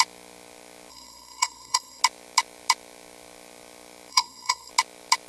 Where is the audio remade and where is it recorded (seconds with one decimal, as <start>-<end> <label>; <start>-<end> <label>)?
0.0-0.9 recorded; 0.9-2.0 remade; 2.0-4.1 recorded; 4.1-4.7 remade; 4.7-5.3 recorded

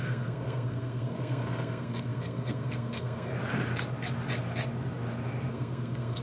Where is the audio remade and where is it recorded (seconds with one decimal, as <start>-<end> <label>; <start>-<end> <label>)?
0.0-3.3 remade; 3.3-5.5 recorded; 5.5-6.2 remade

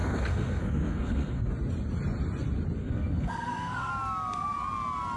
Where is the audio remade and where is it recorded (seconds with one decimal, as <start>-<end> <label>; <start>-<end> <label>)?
0.0-1.5 remade; 1.5-2.8 recorded; 2.8-3.9 remade; 3.9-5.2 recorded

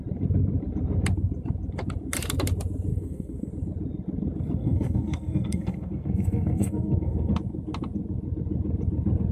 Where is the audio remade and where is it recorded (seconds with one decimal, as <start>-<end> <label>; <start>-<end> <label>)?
0.0-2.9 recorded; 2.9-3.5 remade; 3.5-4.6 recorded; 4.6-7.3 remade; 7.3-9.3 recorded

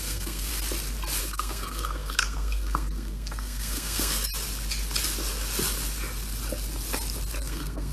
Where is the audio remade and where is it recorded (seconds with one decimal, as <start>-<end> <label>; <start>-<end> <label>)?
0.0-0.5 remade; 0.5-1.2 recorded; 1.2-4.3 remade; 4.3-7.4 recorded; 7.4-7.9 remade

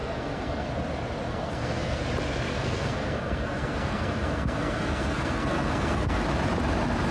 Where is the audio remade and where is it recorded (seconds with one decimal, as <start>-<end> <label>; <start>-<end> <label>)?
0.0-0.7 remade; 0.7-1.3 recorded; 1.3-2.0 remade; 2.0-2.5 recorded; 2.5-6.2 remade; 6.2-7.1 recorded